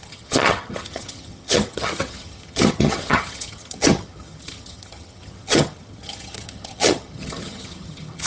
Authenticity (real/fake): fake